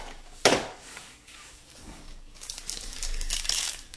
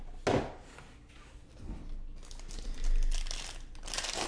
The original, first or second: second